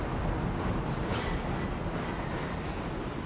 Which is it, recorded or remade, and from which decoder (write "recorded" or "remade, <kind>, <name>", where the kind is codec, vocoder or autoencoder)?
recorded